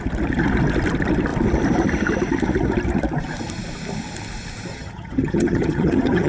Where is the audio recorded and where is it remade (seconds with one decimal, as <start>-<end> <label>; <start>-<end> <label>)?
0.0-4.7 recorded; 4.7-6.3 remade